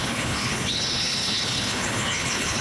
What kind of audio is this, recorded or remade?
remade